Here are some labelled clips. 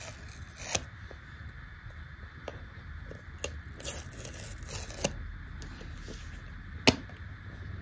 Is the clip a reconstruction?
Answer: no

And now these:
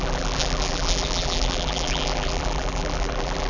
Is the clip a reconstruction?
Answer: yes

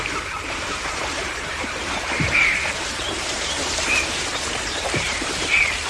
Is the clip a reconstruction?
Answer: yes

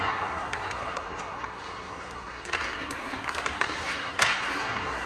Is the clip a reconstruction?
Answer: yes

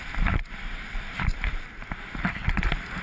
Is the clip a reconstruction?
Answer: no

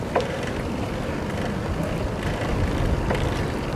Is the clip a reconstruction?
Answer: no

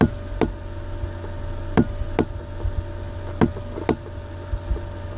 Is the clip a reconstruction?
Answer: no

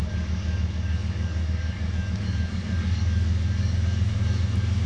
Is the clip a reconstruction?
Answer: yes